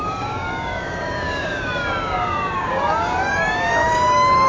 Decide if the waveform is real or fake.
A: fake